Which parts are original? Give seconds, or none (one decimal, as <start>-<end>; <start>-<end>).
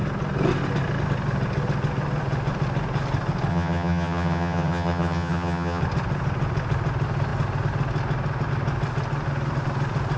0.0-3.5; 5.8-10.2